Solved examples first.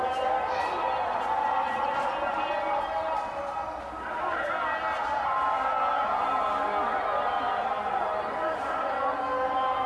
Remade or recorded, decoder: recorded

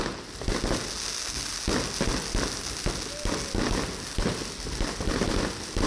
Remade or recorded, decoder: recorded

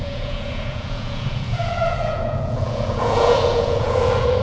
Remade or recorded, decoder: remade, vocoder, Vocos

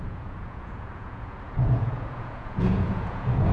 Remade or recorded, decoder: remade, vocoder, Vocos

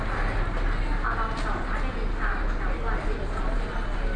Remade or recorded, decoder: recorded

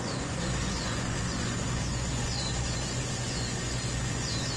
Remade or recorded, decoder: remade, vocoder, Vocos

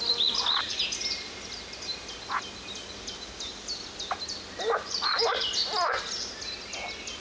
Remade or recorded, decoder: recorded